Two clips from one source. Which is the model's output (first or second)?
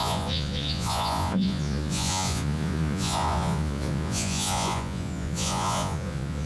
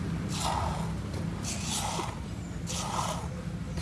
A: first